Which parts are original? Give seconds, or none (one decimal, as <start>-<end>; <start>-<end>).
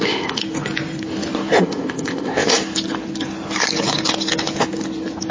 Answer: 0.4-1.6; 2.5-5.3